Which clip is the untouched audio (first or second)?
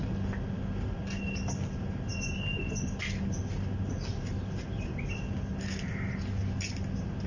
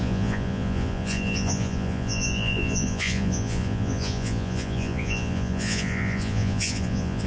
first